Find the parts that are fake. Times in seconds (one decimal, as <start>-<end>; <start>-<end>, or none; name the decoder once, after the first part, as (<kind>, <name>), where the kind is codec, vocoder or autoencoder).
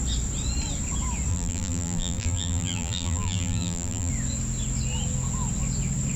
1.3-4.1 (vocoder, BigVGAN v2)